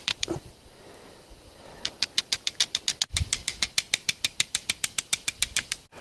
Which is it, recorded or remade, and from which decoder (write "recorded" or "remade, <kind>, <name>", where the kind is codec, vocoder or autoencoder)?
recorded